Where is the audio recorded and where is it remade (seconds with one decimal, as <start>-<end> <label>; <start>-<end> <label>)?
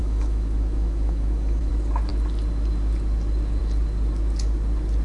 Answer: 0.0-1.7 remade; 1.7-5.0 recorded